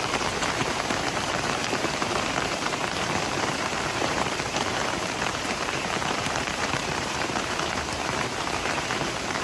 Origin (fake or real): fake